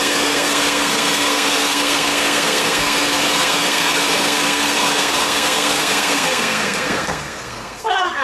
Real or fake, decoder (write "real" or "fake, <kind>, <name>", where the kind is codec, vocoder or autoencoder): fake, codec, SNAC